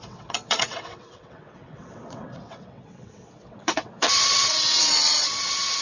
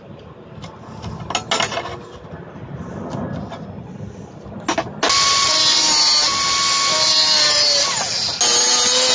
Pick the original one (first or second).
second